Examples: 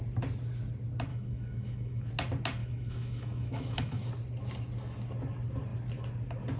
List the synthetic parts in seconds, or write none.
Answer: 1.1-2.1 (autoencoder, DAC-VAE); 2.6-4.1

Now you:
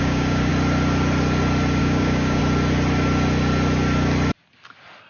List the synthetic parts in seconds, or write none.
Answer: 0.0-0.5 (codec, DAC); 1.8-2.4

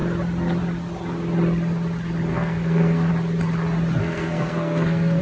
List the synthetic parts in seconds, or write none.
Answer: 2.3-3.1 (codec, SNAC); 4.0-5.2